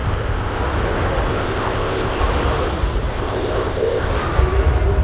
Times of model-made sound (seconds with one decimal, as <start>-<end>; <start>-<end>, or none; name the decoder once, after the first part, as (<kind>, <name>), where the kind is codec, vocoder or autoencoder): 0.0-0.6 (codec, ZipCodec); 1.3-2.2; 3.1-4.1